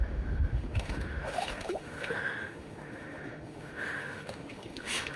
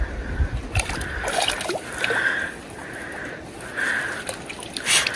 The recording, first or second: second